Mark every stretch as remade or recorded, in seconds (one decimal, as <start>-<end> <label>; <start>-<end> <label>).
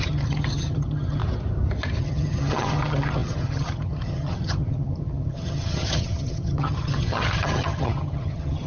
0.0-1.2 remade; 1.2-2.0 recorded; 2.0-8.7 remade